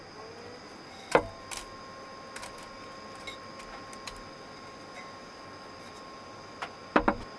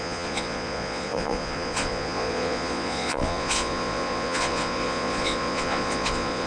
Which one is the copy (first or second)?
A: second